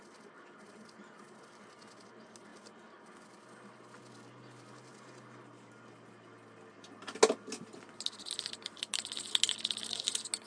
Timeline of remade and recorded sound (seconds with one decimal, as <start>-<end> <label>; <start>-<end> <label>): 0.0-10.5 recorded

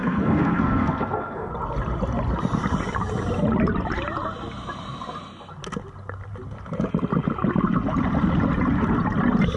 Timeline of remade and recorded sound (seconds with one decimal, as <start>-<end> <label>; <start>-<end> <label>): 0.0-1.5 remade; 1.5-9.6 recorded

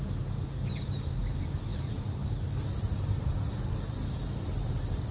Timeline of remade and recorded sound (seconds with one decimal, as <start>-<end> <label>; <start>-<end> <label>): 0.0-5.1 recorded

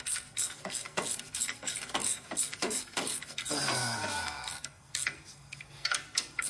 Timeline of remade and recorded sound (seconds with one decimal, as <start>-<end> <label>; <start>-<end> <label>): 0.0-6.5 remade

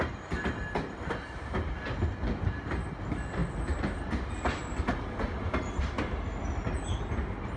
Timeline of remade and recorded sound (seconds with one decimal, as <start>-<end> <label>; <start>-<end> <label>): 0.0-7.6 recorded

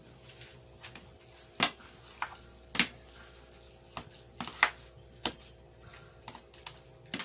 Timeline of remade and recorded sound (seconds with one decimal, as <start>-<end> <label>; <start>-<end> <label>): 0.0-7.2 recorded

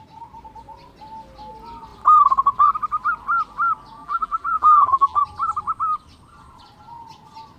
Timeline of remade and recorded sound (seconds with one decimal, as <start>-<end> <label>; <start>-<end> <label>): 0.0-4.0 recorded; 4.0-5.2 remade; 5.2-7.6 recorded